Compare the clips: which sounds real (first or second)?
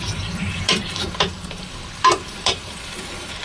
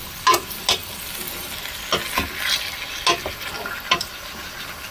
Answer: second